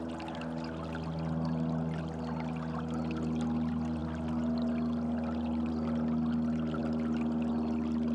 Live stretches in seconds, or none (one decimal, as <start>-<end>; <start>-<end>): 0.0-8.1